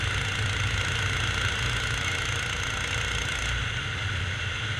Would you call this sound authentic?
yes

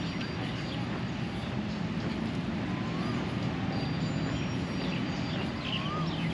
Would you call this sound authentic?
yes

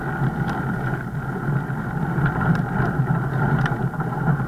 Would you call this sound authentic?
yes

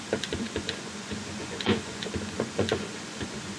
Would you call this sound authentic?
no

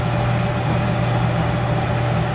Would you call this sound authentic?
yes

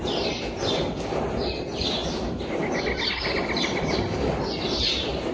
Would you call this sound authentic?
yes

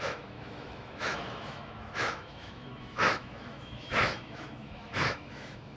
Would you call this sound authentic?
no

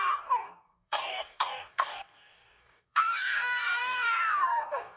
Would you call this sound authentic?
no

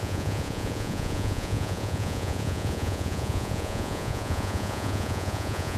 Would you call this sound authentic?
no